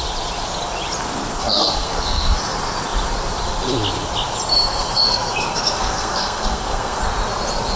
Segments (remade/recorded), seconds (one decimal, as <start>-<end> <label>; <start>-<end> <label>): 0.0-1.4 recorded; 1.4-2.4 remade; 2.4-4.5 recorded; 4.5-7.0 remade; 7.0-7.8 recorded